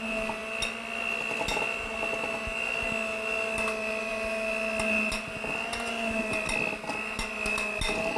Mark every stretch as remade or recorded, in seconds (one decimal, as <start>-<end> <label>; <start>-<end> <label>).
0.0-8.2 recorded